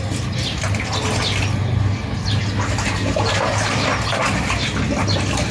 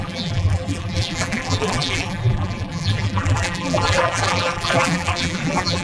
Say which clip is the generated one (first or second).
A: second